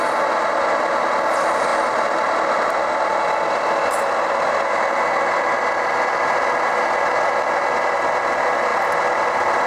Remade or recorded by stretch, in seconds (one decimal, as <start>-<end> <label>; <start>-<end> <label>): 0.0-9.7 recorded